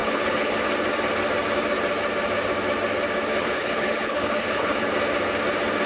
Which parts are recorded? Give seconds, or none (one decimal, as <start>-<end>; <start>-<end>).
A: 0.6-3.3; 4.9-5.9